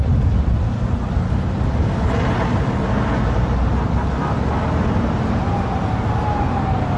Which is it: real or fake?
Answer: real